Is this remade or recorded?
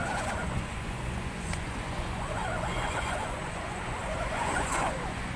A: remade